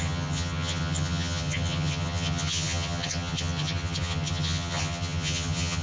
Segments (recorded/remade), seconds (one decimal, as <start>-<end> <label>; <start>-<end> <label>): 0.0-5.8 remade